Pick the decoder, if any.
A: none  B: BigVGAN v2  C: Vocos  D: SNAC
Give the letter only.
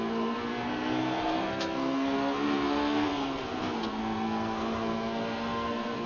D